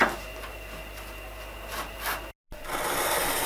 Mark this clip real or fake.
real